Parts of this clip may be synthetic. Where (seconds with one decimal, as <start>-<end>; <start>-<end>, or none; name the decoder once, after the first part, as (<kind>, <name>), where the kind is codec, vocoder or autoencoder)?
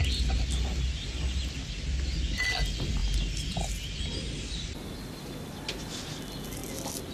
none